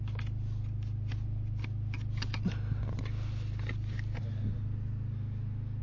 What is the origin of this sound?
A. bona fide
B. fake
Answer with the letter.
A